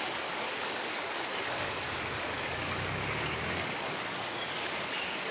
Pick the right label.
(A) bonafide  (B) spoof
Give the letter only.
B